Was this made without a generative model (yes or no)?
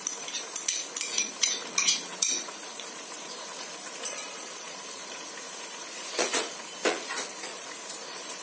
no